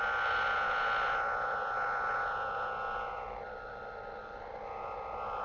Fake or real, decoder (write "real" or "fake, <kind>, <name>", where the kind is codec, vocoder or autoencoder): real